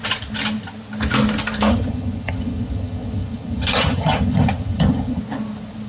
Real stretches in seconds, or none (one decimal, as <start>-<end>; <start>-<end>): 0.0-1.7; 5.2-5.9